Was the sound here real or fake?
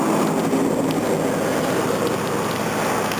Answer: real